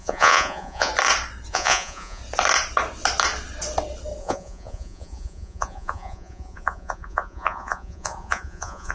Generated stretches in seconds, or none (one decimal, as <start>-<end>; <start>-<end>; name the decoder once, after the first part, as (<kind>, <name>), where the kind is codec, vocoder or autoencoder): 0.0-0.9 (vocoder, Vocos); 1.5-2.2; 4.2-8.9

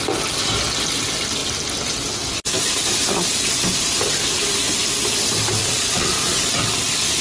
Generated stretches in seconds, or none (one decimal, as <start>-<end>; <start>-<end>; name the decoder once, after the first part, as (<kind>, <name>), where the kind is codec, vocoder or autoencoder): 5.6-6.5 (vocoder, Vocos)

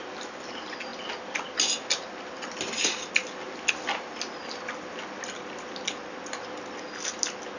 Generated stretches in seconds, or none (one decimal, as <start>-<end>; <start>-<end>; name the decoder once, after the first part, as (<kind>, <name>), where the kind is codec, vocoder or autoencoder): none